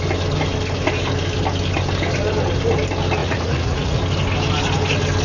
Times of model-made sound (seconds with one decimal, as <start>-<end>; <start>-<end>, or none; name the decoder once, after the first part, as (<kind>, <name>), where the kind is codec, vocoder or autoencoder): 3.2-4.0 (vocoder, Vocos)